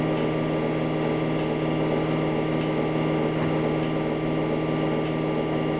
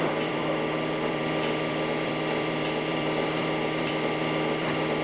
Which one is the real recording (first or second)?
first